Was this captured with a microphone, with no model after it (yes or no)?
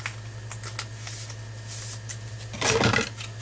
yes